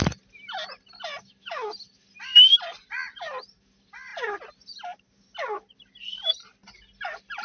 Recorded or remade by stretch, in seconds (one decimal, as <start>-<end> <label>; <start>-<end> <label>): 0.0-7.4 recorded